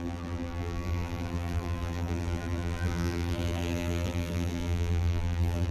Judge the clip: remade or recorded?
remade